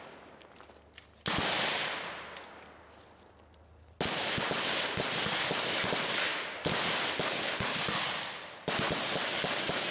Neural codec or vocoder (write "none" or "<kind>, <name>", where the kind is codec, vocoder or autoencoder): none